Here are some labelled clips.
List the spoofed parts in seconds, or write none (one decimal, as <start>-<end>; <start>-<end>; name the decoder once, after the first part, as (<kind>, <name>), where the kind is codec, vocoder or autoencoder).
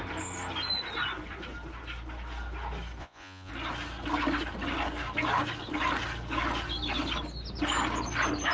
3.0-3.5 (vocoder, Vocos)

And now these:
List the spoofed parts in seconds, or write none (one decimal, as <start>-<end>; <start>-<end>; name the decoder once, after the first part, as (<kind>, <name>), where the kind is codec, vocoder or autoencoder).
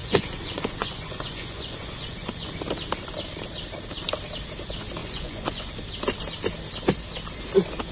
0.0-2.5 (vocoder, Vocos); 5.0-5.7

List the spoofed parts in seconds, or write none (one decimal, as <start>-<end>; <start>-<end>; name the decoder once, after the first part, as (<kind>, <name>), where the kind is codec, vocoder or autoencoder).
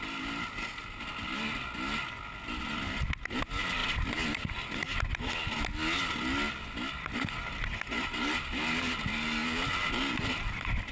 none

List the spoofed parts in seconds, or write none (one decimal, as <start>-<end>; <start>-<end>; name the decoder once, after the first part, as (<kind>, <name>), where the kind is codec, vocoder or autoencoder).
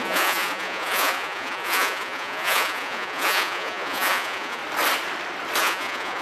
0.0-4.6 (vocoder, Vocos); 5.6-6.2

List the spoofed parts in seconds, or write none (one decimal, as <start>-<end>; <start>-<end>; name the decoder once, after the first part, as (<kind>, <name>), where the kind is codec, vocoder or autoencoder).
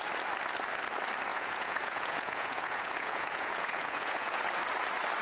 1.3-4.4 (vocoder, Vocos)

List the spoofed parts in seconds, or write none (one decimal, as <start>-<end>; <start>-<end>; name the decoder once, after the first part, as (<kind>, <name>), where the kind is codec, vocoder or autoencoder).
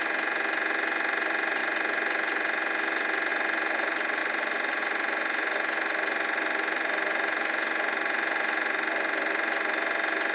none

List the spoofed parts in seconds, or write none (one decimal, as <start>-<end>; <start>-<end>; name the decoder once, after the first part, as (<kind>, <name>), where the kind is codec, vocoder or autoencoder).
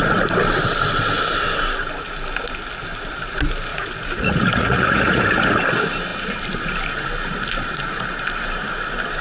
3.7-5.2 (vocoder, Vocos)